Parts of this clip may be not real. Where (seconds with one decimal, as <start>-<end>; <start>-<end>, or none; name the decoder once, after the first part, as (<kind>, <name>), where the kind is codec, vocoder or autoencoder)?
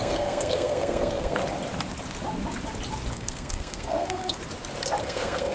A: 0.0-1.4 (codec, SNAC); 3.1-4.4; 5.0-5.5